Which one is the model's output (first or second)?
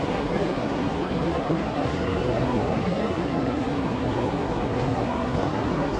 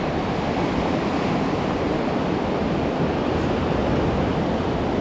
first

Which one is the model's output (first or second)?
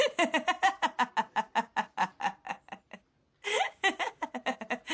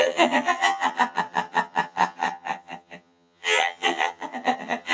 second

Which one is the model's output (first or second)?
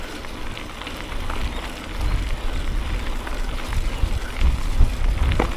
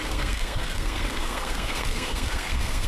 second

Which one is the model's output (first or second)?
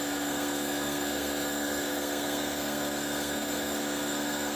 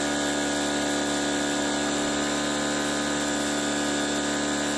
first